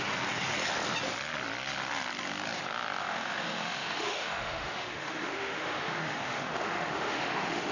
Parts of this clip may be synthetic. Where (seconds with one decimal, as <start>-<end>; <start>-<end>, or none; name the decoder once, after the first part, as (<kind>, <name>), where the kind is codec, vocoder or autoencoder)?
3.0-7.7 (autoencoder, DAC-VAE)